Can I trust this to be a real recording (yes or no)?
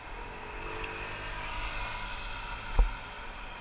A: yes